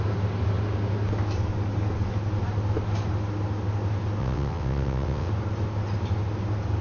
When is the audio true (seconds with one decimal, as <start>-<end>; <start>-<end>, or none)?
0.0-4.2; 5.3-6.8